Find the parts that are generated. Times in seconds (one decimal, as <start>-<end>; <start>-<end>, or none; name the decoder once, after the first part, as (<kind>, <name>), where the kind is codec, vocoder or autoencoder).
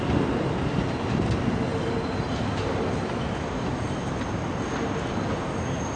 none